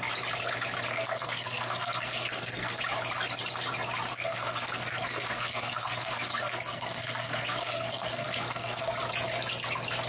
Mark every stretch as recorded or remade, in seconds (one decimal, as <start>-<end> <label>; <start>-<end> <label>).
0.0-0.9 recorded; 0.9-2.8 remade; 2.8-4.1 recorded; 4.1-8.9 remade; 8.9-10.1 recorded